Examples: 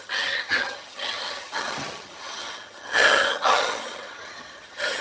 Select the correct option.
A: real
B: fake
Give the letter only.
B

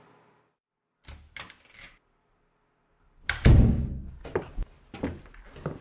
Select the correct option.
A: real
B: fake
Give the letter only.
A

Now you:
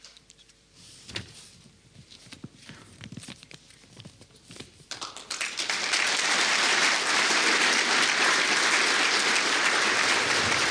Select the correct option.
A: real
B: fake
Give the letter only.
B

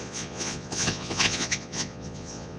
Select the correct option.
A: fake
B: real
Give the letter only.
A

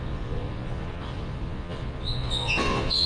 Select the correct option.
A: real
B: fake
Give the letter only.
B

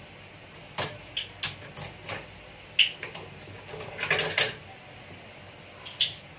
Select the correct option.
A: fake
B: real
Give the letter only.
B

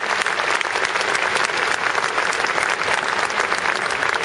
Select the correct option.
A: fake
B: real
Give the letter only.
B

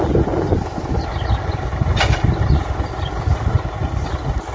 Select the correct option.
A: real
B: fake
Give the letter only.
A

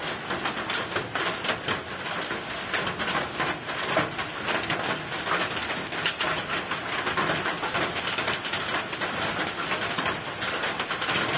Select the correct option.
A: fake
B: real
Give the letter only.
B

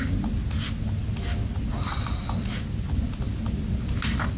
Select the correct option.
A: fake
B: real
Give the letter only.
B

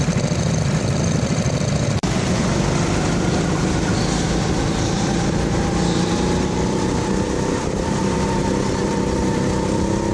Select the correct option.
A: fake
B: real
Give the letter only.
A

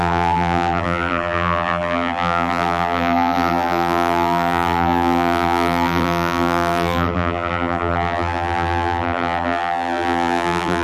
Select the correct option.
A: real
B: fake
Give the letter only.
B